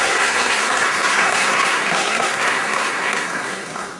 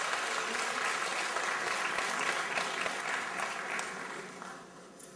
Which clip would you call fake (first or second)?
first